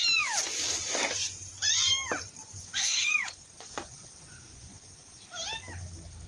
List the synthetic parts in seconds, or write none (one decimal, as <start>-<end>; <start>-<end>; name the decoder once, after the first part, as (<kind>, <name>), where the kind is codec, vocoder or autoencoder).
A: 1.2-1.9 (vocoder, Vocos); 2.4-5.2

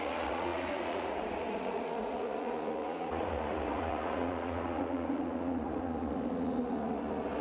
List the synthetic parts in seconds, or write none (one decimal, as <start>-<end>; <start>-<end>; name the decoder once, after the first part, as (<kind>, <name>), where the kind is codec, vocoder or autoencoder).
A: 0.0-7.4 (vocoder, Vocos)

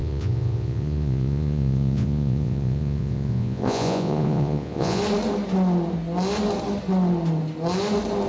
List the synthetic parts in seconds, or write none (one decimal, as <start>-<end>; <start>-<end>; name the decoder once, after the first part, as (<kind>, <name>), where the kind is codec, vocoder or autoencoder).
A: 0.0-5.0 (vocoder, Vocos)

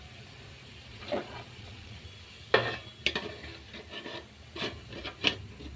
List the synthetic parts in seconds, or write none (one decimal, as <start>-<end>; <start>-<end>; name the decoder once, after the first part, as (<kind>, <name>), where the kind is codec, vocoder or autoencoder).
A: 0.9-2.0 (vocoder, Vocos)

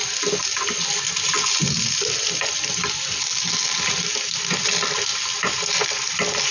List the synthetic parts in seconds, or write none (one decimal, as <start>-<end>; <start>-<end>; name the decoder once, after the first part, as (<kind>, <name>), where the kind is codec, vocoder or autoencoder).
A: none